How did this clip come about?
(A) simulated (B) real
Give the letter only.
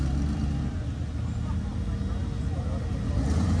B